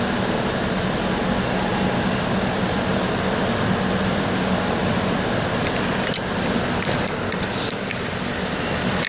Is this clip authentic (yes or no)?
yes